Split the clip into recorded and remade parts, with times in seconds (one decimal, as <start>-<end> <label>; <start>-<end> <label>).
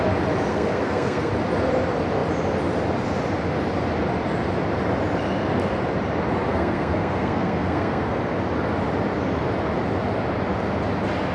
0.0-0.5 recorded; 0.5-1.3 remade; 1.3-6.5 recorded; 6.5-8.2 remade; 8.2-11.3 recorded